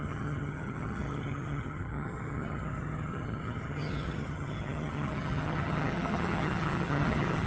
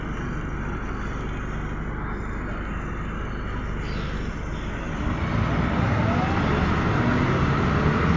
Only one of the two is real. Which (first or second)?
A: second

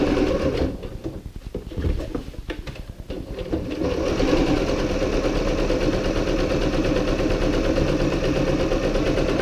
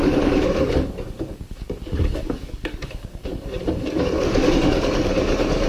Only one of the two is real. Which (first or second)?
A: first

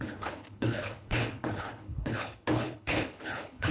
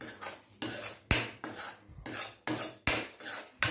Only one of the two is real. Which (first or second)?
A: second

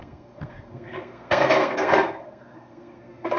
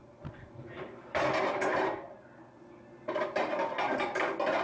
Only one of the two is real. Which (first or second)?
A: second